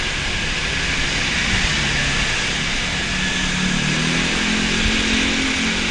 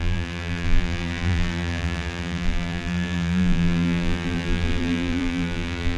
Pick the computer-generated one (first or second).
second